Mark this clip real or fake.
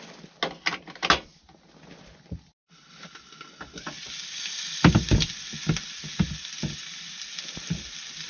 real